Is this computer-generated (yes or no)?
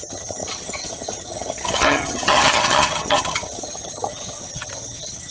yes